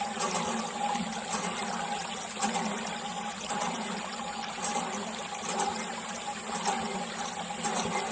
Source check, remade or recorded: recorded